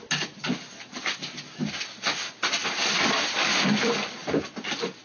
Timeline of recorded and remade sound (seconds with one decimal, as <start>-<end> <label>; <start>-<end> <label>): 0.0-5.0 recorded